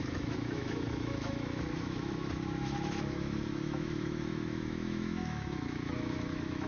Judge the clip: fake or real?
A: fake